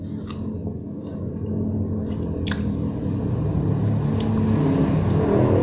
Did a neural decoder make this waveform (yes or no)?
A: no